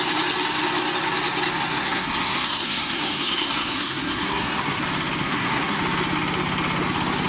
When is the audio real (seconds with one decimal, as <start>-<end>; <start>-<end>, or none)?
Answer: 0.0-1.7; 4.8-5.2; 5.8-7.3